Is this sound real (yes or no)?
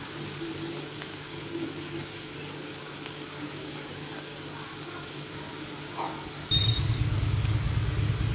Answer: no